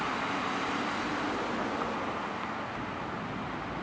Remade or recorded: recorded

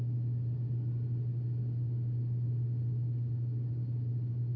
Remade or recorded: recorded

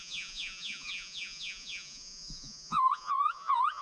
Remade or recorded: remade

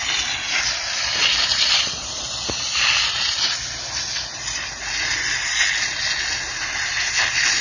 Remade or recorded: recorded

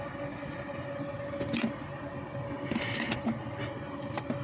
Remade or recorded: recorded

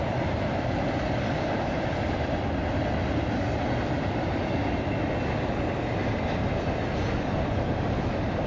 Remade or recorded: recorded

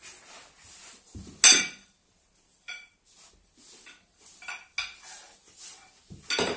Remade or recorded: recorded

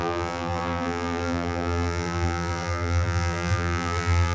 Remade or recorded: remade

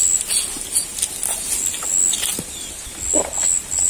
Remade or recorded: recorded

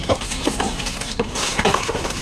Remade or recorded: remade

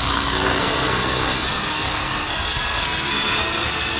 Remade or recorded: remade